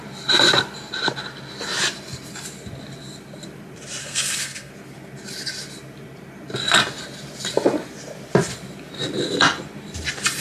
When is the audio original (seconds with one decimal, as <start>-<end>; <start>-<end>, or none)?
0.0-4.0; 4.7-10.4